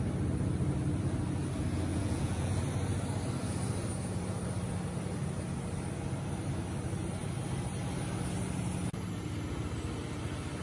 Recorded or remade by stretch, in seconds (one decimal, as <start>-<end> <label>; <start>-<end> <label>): 0.0-1.9 recorded; 1.9-2.6 remade; 2.6-10.6 recorded